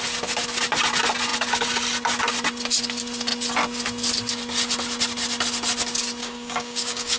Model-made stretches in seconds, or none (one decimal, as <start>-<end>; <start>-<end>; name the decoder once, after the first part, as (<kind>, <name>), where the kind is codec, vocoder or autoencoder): 6.2-7.2 (codec, DAC)